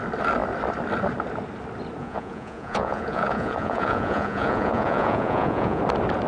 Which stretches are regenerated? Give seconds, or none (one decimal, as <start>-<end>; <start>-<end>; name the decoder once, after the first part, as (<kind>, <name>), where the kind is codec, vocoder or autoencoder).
2.0-5.8 (vocoder, Vocos)

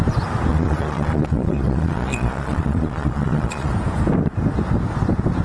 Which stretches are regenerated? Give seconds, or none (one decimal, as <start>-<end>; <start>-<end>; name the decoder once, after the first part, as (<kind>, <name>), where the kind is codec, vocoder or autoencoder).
0.5-3.7 (vocoder, Vocos)